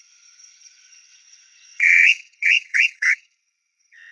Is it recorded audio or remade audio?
remade